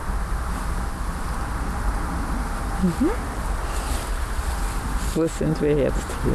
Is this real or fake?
real